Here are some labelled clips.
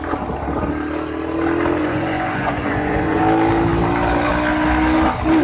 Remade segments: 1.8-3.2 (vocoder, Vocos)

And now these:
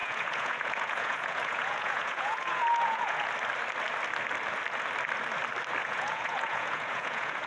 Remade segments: 0.0-3.3 (vocoder, Vocos); 5.8-7.5